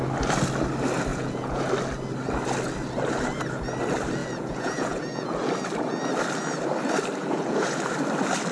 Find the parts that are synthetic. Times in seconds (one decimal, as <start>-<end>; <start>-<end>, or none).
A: 1.1-1.6; 4.2-5.5; 7.2-7.8